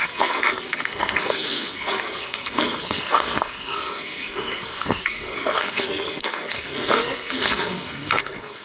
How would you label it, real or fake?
fake